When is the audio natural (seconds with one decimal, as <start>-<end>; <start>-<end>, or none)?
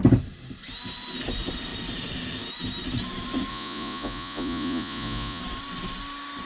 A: 0.0-3.5; 5.4-6.5